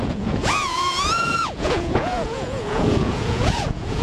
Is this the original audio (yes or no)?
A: no